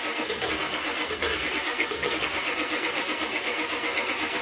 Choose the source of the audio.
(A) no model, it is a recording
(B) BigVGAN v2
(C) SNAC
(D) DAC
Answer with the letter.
C